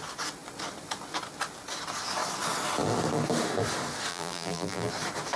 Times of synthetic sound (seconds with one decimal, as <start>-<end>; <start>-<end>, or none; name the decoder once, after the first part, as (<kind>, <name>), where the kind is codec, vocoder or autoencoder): 4.1-4.9 (vocoder, BigVGAN v2)